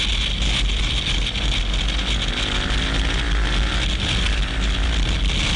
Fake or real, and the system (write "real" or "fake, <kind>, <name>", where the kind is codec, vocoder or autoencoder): real